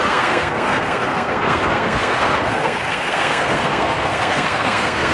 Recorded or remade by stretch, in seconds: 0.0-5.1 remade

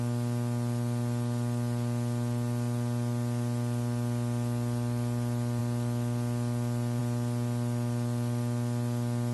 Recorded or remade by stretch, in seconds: 0.0-9.3 recorded

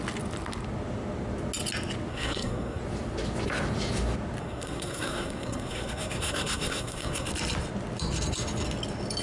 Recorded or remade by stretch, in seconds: 0.0-2.1 recorded; 2.1-2.8 remade; 2.8-4.4 recorded; 4.4-7.3 remade; 7.3-9.2 recorded

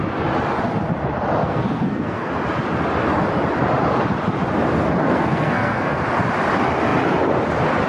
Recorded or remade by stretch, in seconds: 0.0-1.4 recorded; 1.4-2.3 remade; 2.3-5.0 recorded; 5.0-6.0 remade; 6.0-7.9 recorded

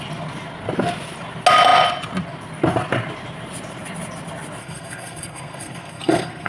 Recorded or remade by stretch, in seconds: 0.0-4.6 recorded; 4.6-6.5 remade

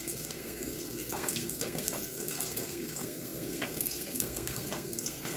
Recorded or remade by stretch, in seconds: 0.0-5.4 remade